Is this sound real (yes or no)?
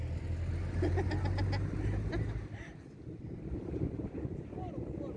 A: yes